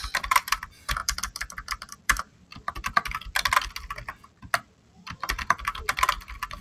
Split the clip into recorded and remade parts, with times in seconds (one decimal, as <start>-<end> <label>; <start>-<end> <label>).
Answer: 0.0-2.5 remade; 2.5-5.0 recorded; 5.0-6.6 remade

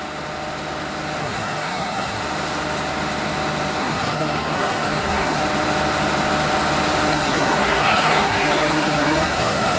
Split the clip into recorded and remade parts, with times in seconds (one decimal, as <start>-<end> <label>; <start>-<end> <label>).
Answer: 0.0-1.2 recorded; 1.2-2.2 remade; 2.2-3.8 recorded; 3.8-5.4 remade; 5.4-7.1 recorded; 7.1-9.8 remade